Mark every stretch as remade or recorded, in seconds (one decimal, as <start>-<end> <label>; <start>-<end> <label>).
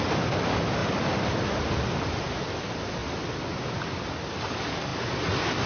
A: 0.0-5.7 recorded